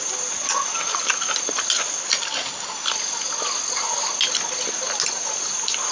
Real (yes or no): yes